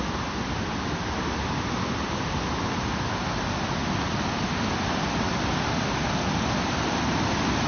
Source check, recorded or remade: recorded